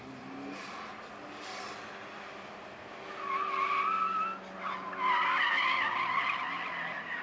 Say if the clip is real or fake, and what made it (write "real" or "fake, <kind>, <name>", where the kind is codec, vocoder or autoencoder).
real